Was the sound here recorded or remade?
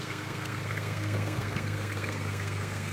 remade